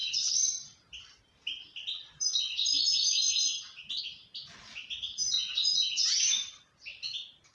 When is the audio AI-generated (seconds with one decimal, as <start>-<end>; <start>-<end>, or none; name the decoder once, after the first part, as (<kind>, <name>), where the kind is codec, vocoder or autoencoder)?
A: 0.0-4.0 (vocoder, BigVGAN v2)